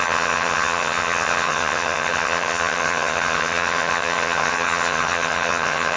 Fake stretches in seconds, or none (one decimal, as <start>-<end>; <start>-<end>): 0.0-6.0